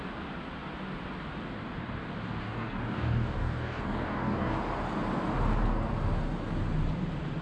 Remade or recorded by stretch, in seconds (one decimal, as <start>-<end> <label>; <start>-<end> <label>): 0.0-2.4 recorded; 2.4-4.6 remade; 4.6-7.4 recorded